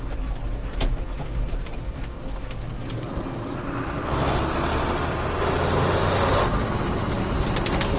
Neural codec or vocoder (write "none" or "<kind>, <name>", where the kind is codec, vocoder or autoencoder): none